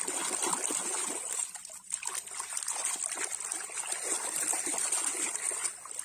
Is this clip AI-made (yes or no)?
no